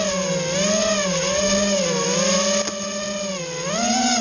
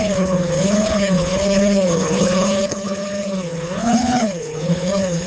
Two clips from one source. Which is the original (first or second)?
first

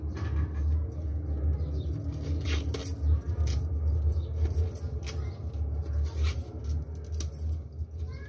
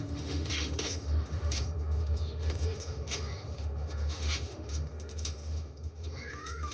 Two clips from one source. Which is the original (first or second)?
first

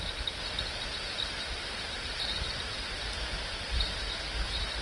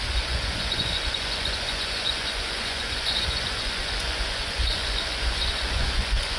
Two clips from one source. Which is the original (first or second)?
first